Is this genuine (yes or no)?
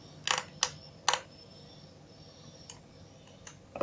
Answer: yes